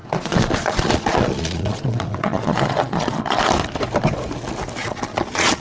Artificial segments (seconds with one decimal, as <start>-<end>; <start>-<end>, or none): 0.0-3.4; 4.8-5.6

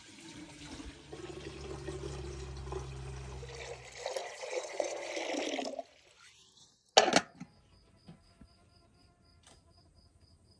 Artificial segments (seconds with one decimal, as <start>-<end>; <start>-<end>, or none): 4.2-5.1

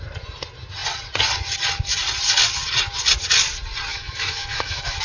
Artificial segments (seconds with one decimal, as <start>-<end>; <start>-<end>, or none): 3.9-5.0

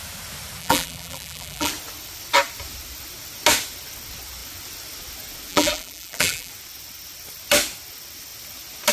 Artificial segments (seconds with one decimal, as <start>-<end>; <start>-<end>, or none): 0.6-1.7; 5.5-6.5

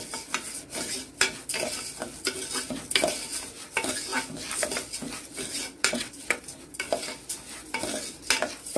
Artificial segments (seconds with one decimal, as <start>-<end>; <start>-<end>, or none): 5.8-6.4

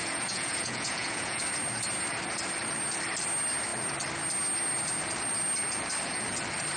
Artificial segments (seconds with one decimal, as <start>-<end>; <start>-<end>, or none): 0.0-1.4

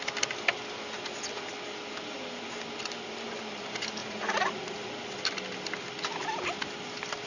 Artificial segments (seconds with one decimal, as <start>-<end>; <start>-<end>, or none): 4.0-4.5